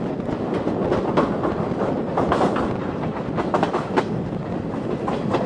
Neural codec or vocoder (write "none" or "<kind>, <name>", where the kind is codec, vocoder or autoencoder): none